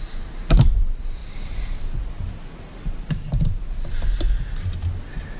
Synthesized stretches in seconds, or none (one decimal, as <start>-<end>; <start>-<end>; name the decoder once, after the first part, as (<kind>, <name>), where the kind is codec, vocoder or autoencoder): 0.0-5.4 (vocoder, BigVGAN v2)